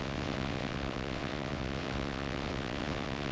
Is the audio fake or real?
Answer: fake